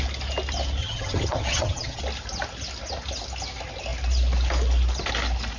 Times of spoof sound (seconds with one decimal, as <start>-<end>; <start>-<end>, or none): 0.8-2.0